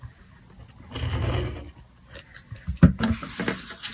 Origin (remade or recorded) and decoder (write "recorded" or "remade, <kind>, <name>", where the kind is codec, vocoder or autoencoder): recorded